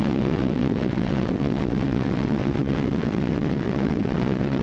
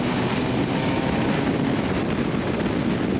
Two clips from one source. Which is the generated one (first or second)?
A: first